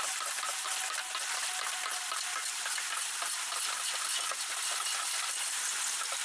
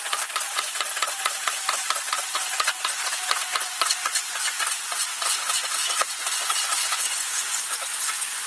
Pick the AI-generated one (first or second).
second